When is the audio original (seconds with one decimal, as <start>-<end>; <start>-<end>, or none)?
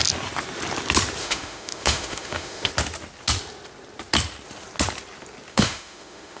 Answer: 0.0-1.2; 2.7-5.5